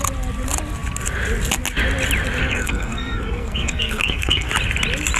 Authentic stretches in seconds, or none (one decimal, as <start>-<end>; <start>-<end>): 0.0-2.4; 4.5-5.2